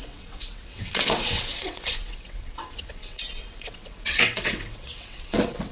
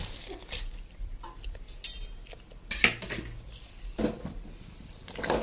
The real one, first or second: second